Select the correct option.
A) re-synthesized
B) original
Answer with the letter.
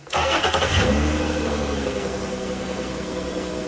A